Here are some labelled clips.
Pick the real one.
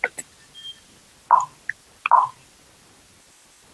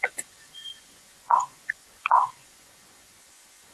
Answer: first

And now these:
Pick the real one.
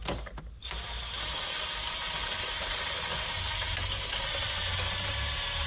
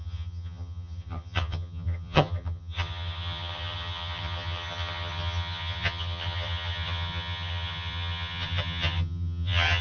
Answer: first